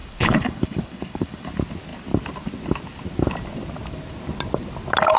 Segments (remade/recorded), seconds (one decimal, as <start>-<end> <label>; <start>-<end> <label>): 0.0-1.5 remade; 1.5-5.2 recorded